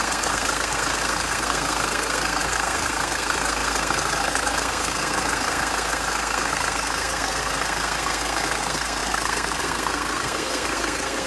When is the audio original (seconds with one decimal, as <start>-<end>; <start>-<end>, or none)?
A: none

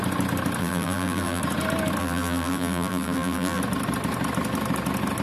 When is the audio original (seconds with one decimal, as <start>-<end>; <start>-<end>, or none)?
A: 0.0-0.6; 1.4-2.0; 3.6-5.2